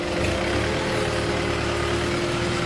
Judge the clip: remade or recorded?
recorded